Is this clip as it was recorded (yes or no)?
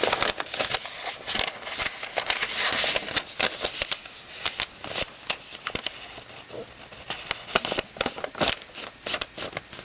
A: yes